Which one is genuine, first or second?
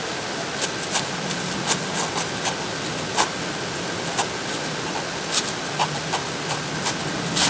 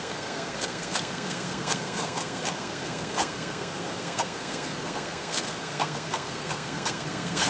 first